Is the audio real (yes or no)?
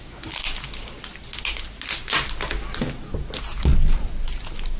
yes